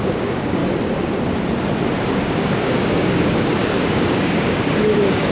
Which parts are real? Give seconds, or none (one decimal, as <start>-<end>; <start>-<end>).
0.6-2.1